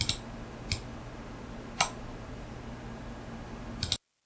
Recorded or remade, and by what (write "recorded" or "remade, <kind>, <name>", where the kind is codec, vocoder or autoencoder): recorded